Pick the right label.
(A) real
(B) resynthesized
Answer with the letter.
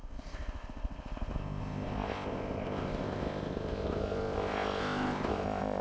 B